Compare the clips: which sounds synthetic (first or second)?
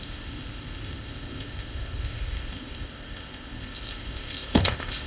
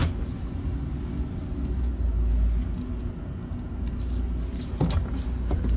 first